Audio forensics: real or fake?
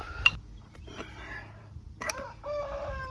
fake